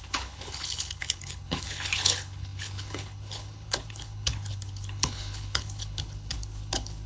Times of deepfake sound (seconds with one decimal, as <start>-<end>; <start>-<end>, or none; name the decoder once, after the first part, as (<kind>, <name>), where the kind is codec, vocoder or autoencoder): 0.0-7.1 (codec, HILCodec)